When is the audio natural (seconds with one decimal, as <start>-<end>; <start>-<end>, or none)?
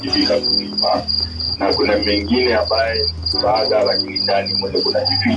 0.0-2.0; 2.7-3.2; 4.5-5.4